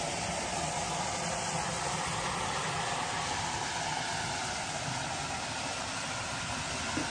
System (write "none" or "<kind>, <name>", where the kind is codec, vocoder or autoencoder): none